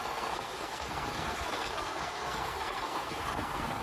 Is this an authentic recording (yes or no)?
no